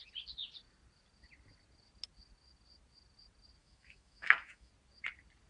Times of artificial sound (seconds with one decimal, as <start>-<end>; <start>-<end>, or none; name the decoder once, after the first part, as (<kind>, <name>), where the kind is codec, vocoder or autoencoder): 3.6-4.7 (autoencoder, DAC-VAE)